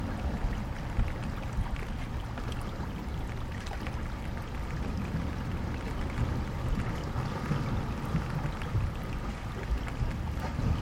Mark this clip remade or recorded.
recorded